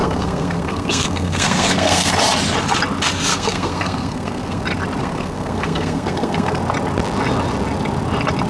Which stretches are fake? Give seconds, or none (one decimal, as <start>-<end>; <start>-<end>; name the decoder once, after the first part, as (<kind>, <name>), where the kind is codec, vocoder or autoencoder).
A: 0.0-2.1 (codec, SNAC); 3.3-4.6; 5.0-6.6